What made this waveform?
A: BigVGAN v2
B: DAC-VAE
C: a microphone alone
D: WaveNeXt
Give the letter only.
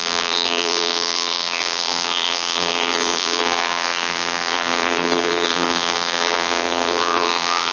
A